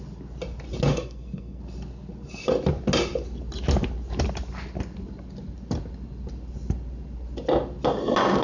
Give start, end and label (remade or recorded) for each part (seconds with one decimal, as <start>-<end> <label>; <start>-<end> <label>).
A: 0.0-0.9 recorded; 0.9-1.6 remade; 1.6-8.4 recorded